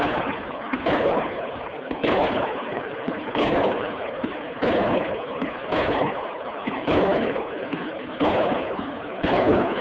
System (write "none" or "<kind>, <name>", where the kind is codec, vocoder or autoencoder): codec, HILCodec